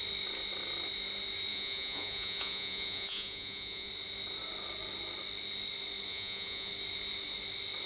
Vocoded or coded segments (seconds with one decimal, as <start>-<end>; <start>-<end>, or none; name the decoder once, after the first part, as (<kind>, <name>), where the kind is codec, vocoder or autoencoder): 1.5-3.9 (vocoder, Vocos); 6.1-6.7